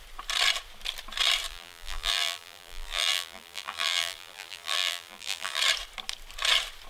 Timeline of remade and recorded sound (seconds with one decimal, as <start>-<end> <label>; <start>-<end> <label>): 0.0-1.5 recorded; 1.5-5.6 remade; 5.6-6.9 recorded